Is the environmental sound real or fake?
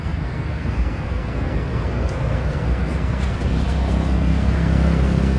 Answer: fake